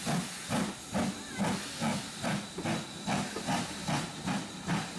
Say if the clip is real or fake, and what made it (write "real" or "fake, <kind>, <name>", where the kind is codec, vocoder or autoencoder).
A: real